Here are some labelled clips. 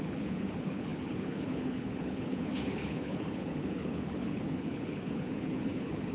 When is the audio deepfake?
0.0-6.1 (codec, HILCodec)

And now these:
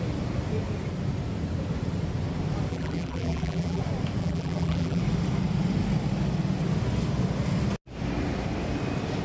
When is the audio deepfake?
2.7-3.8 (vocoder, BigVGAN v2); 4.2-5.0